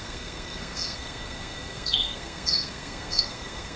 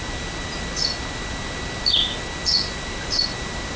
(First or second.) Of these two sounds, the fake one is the first